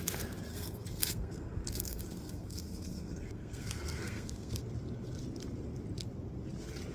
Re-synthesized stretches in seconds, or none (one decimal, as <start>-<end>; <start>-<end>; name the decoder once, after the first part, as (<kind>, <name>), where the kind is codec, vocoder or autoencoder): 0.5-4.6 (codec, SNAC)